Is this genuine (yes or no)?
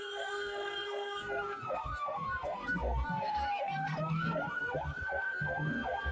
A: no